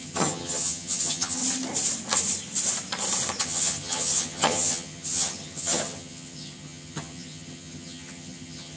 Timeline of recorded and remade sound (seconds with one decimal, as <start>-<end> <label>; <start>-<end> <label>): 0.0-1.4 remade; 1.4-3.4 recorded; 3.4-8.8 remade